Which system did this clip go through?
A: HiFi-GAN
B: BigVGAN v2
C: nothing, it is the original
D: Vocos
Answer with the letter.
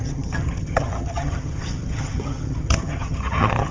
A